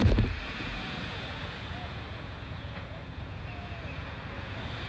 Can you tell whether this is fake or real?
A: fake